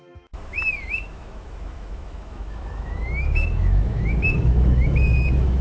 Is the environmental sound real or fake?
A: fake